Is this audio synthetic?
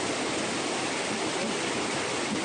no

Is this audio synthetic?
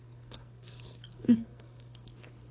yes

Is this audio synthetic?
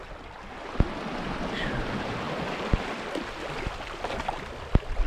no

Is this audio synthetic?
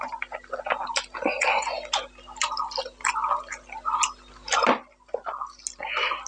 no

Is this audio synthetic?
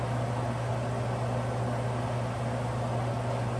no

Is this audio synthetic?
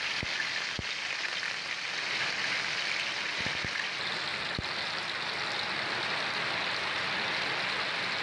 no